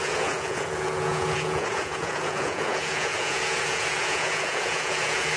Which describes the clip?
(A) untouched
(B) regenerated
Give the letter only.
B